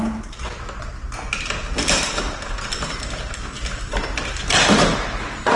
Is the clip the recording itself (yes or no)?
yes